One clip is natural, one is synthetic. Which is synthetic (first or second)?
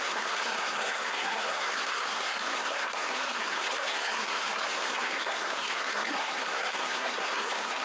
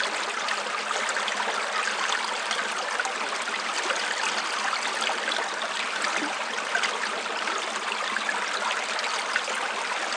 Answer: first